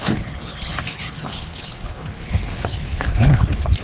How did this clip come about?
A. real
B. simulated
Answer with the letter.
B